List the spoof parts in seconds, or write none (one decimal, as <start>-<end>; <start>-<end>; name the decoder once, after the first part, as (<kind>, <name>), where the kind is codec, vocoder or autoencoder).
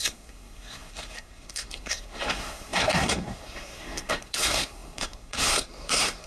0.0-6.3 (codec, SNAC)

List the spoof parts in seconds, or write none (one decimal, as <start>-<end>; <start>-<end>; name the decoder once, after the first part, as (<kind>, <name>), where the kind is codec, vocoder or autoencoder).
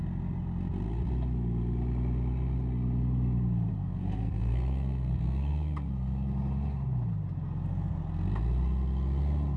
3.7-5.9 (codec, SNAC)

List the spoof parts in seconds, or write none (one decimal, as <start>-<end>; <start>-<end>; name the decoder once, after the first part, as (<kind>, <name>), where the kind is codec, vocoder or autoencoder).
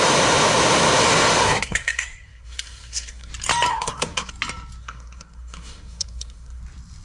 1.4-3.3 (codec, SNAC); 3.7-4.3; 4.8-6.6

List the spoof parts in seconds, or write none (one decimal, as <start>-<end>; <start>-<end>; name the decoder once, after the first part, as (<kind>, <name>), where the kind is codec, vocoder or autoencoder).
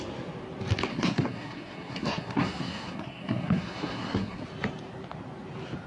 0.9-4.4 (codec, SNAC)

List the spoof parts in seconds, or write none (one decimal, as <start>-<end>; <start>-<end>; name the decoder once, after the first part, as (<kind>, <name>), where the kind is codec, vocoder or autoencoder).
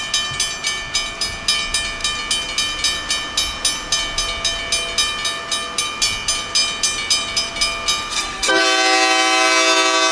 8.1-8.6 (codec, SNAC)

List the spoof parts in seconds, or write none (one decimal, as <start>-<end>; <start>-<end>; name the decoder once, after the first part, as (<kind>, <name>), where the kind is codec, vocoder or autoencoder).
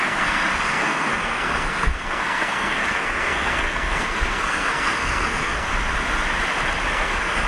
0.0-5.7 (codec, SNAC); 6.9-7.5